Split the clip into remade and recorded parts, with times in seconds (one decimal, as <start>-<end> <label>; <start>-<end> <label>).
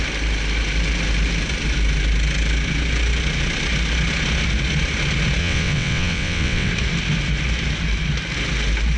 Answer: 0.0-5.4 recorded; 5.4-6.7 remade; 6.7-9.0 recorded